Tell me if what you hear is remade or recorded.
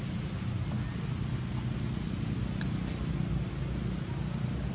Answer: recorded